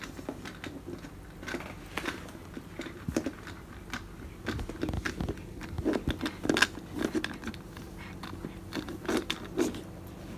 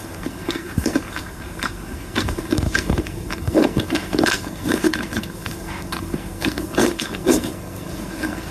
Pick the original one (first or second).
first